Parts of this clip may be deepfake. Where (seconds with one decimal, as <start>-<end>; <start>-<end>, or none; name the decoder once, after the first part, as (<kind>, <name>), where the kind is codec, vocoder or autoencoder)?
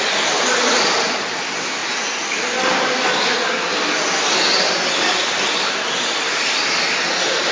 0.0-1.8 (vocoder, BigVGAN v2); 4.9-7.5